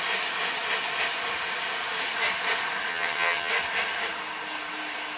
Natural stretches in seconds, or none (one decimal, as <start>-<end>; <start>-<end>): 0.0-2.9; 3.5-5.2